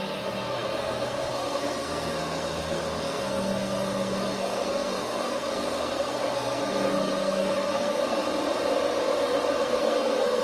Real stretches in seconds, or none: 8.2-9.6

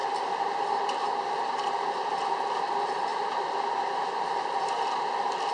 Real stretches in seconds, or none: 0.0-5.5

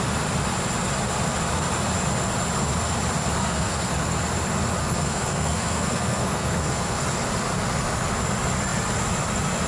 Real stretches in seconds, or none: 0.0-3.4; 3.9-4.8; 7.0-9.7

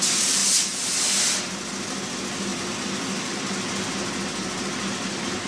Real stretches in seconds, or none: 0.0-5.5

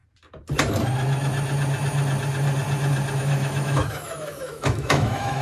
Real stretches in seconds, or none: 0.0-3.2

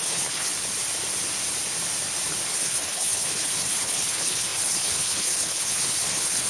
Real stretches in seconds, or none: 0.5-2.5

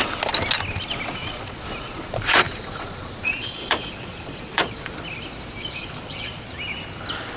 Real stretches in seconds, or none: 0.0-1.2; 4.9-5.6; 6.5-7.4

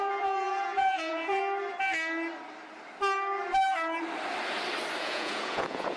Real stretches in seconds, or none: 1.4-5.0